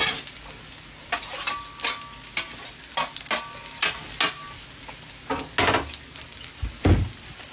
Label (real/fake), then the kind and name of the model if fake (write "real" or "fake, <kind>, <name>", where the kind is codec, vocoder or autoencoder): real